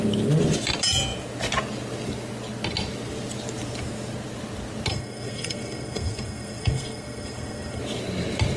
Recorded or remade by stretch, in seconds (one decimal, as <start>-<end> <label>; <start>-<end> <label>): 0.0-4.9 recorded; 4.9-7.8 remade; 7.8-8.6 recorded